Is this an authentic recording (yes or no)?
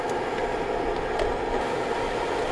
yes